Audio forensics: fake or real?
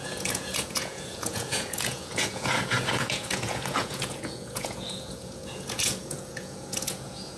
fake